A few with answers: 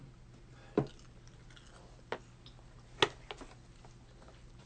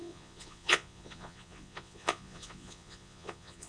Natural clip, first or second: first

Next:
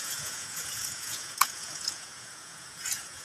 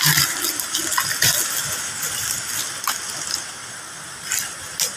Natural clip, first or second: second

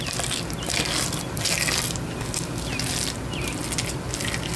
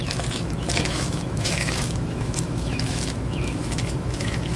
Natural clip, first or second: first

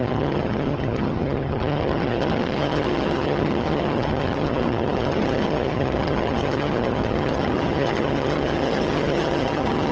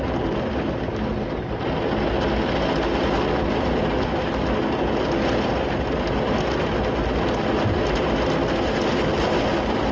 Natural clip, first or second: second